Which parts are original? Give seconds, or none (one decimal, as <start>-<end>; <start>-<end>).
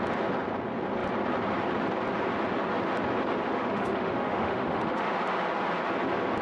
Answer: 0.0-3.5; 5.1-6.4